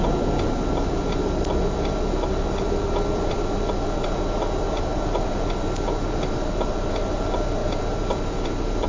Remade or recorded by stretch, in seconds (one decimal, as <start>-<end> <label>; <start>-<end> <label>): 0.0-8.9 recorded

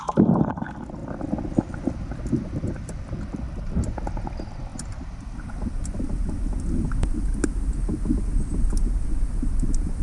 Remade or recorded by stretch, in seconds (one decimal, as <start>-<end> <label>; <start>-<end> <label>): 0.0-1.0 recorded; 1.0-3.6 remade; 3.6-10.0 recorded

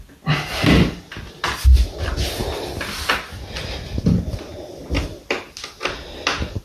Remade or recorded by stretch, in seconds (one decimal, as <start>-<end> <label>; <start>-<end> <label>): 0.0-6.6 recorded

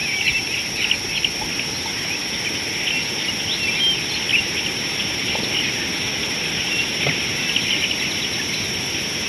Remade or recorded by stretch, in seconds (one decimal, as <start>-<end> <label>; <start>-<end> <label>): 0.0-9.3 recorded